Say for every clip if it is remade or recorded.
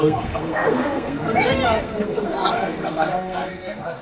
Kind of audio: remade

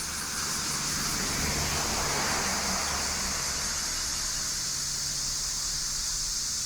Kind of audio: recorded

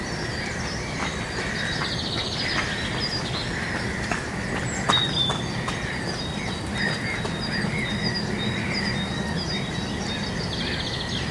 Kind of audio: recorded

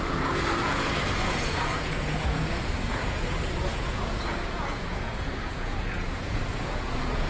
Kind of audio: remade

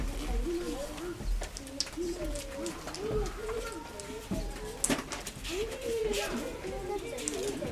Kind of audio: recorded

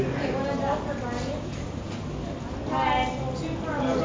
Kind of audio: recorded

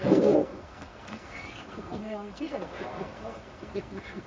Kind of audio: remade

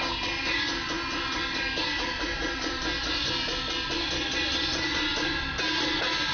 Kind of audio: recorded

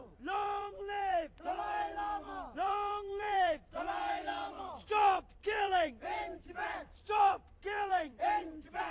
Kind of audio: remade